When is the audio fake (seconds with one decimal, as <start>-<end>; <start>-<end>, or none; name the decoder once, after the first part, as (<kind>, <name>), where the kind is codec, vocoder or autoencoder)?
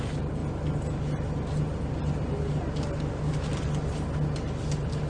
none